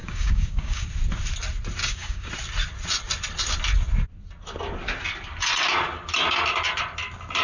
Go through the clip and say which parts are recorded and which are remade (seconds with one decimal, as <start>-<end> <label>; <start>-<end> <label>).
0.0-0.9 remade; 0.9-1.8 recorded; 1.8-2.3 remade; 2.3-7.4 recorded